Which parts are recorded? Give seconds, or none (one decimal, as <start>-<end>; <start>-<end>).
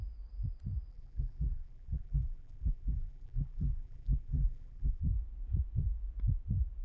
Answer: 0.0-0.9; 5.0-6.8